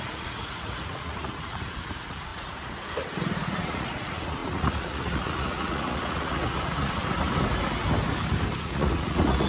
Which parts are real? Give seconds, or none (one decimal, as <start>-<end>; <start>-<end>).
7.0-8.6